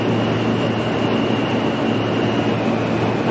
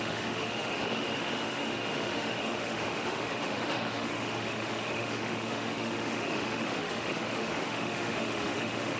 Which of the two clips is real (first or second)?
first